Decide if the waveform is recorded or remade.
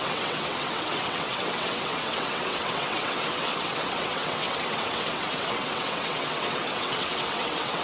remade